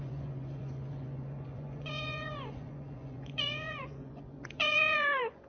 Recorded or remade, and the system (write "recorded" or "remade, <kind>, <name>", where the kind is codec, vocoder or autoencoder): remade, vocoder, Vocos